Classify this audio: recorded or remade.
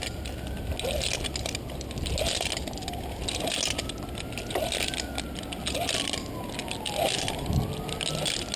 recorded